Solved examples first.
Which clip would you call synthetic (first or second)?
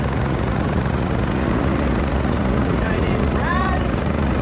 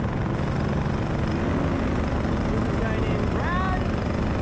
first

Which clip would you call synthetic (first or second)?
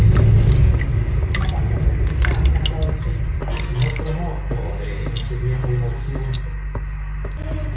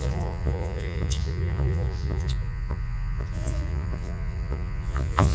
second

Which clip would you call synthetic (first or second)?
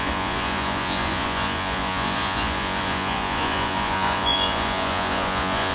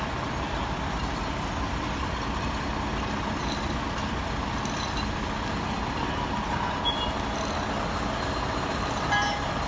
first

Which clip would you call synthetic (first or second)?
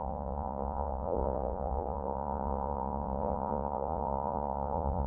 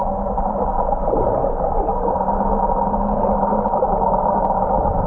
first